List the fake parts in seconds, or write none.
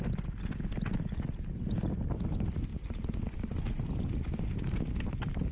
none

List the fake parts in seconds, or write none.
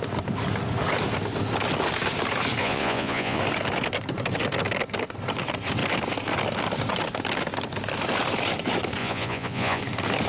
2.6-3.4 (vocoder, Vocos); 9.0-9.8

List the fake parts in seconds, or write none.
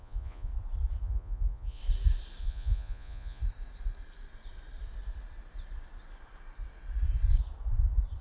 0.0-0.5 (vocoder, Vocos); 1.0-1.8; 2.4-3.4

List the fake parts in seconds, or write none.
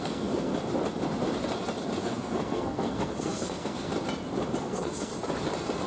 0.0-0.5 (codec, SNAC); 2.0-3.9; 4.6-5.1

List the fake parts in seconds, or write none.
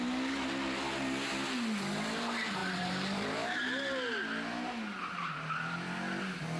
2.6-3.7 (vocoder, BigVGAN v2)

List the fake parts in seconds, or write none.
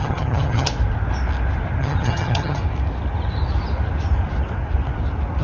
0.0-0.7 (vocoder, HiFi-GAN); 1.8-2.6